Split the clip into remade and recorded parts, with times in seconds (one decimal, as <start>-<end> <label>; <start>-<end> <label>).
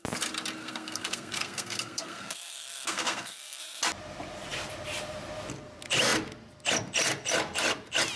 0.0-0.6 recorded; 0.6-3.6 remade; 3.6-8.2 recorded